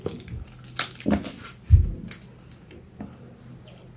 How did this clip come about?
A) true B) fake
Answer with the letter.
A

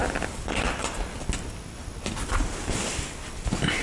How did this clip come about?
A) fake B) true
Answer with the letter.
B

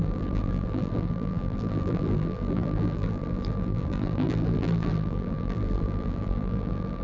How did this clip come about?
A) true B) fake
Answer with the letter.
B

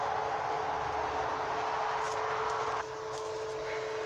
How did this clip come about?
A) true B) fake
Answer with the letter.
A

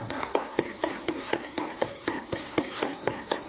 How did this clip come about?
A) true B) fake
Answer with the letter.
B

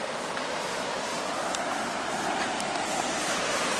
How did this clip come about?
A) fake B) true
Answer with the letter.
B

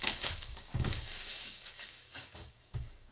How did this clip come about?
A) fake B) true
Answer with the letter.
A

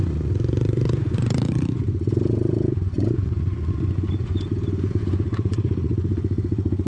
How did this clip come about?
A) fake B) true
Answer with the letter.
A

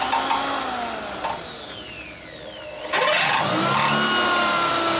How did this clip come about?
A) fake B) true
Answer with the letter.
B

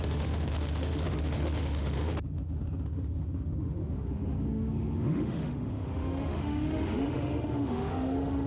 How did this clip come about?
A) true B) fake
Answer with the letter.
B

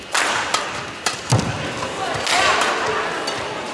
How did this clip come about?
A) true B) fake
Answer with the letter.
A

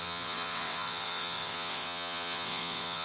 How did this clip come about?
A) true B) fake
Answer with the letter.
B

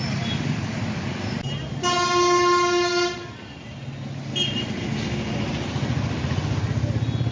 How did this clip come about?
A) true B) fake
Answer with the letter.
A